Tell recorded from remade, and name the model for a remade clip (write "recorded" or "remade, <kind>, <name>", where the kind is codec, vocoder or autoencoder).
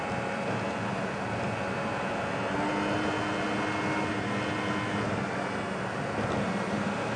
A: recorded